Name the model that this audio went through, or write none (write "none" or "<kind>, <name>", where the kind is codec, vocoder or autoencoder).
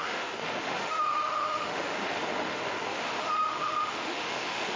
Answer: autoencoder, DAC-VAE